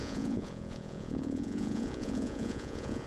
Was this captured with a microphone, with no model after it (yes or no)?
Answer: no